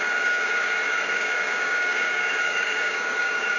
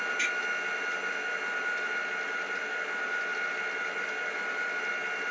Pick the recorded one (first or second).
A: second